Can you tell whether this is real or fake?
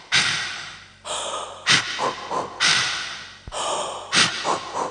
real